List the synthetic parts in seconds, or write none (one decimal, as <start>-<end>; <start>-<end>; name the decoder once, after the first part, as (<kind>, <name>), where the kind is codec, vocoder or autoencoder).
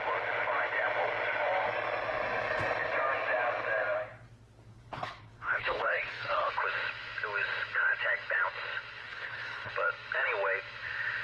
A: 4.7-6.5 (codec, HILCodec); 9.0-9.7